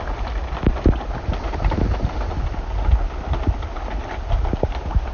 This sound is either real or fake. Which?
real